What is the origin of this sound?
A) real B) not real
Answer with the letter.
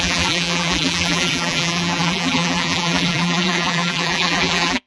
B